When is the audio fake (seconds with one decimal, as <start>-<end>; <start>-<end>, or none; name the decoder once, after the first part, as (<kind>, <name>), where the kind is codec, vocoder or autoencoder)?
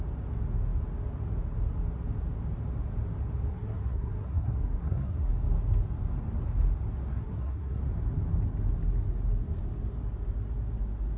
3.5-5.3 (codec, SNAC); 7.1-7.8